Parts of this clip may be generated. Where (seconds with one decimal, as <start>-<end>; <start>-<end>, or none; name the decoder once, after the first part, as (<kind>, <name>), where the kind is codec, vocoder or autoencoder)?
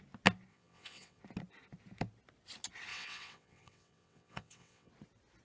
0.5-1.2 (vocoder, WaveNeXt); 2.9-4.9